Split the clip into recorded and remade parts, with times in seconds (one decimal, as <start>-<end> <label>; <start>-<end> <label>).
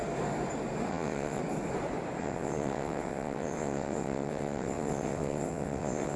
0.0-0.9 recorded; 0.9-1.4 remade; 1.4-2.2 recorded; 2.2-6.2 remade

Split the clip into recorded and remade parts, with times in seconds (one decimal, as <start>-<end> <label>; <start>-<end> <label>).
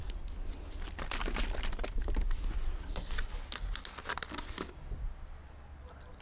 0.0-6.2 recorded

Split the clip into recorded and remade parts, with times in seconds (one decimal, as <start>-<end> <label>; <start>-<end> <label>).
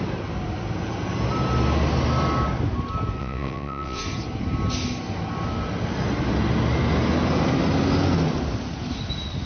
0.0-3.2 recorded; 3.2-4.0 remade; 4.0-9.5 recorded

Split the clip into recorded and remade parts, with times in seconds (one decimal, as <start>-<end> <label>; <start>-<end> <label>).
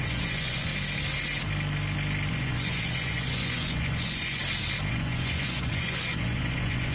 0.0-0.7 remade; 0.7-2.3 recorded; 2.3-4.4 remade; 4.4-4.9 recorded; 4.9-6.9 remade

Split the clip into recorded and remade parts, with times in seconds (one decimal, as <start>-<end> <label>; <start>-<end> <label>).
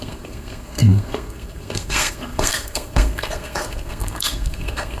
0.0-5.0 remade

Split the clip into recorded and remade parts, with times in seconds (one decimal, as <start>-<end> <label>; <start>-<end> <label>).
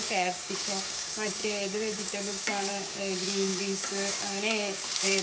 0.0-5.2 remade